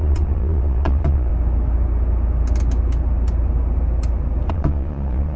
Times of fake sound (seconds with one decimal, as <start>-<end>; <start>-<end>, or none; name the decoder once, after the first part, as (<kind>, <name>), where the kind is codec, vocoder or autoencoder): 0.0-1.3 (vocoder, Vocos); 4.5-5.4